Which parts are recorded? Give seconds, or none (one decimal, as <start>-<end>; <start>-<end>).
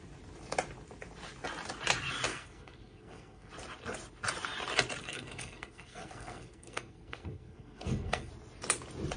0.0-2.3; 3.5-5.0; 8.3-9.2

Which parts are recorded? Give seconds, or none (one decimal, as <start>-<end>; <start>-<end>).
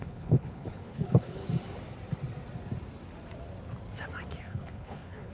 1.4-4.4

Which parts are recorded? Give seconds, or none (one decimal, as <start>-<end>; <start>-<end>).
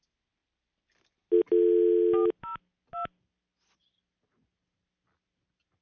0.0-5.8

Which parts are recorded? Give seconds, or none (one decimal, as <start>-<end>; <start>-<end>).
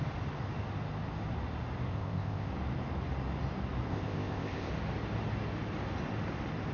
0.0-1.9; 2.5-3.9; 4.7-6.7